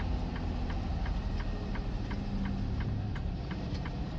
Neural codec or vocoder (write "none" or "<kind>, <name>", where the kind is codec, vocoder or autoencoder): none